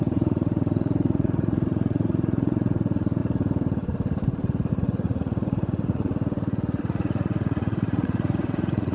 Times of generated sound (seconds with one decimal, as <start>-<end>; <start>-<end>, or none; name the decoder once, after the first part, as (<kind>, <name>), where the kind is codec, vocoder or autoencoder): 0.0-3.2 (vocoder, Vocos); 4.7-6.1; 6.8-8.9